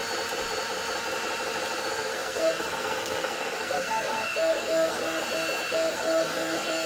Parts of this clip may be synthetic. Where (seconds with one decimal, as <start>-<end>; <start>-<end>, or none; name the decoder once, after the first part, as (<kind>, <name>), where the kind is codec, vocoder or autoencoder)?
1.8-5.0 (codec, SNAC); 5.7-6.9